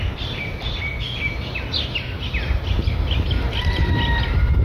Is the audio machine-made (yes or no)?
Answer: no